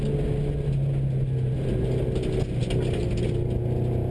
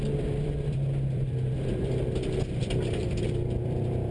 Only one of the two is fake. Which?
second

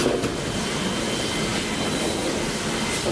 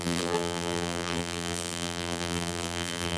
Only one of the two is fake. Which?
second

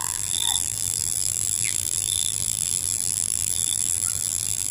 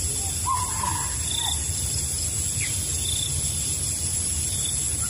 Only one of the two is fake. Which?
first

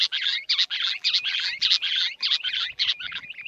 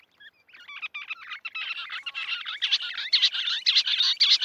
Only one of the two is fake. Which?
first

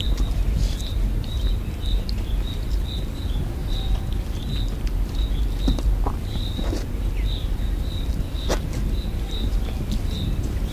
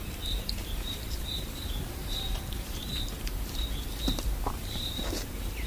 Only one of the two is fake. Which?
second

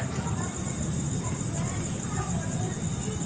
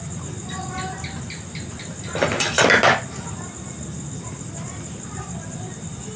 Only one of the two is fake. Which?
first